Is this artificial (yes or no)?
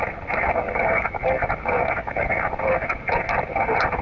no